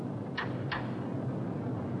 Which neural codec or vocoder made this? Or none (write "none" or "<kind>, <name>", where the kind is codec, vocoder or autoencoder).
none